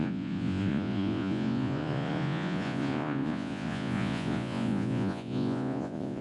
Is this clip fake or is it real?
fake